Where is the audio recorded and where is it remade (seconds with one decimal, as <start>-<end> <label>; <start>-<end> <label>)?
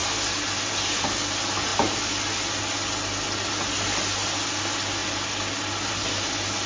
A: 0.0-6.7 recorded